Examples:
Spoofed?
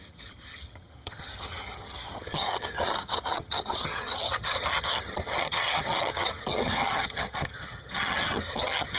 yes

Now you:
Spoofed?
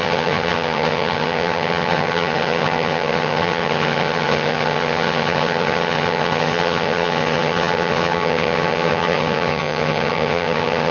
yes